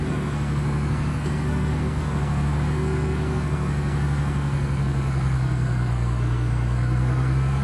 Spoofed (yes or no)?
yes